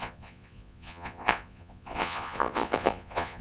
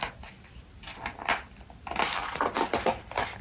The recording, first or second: second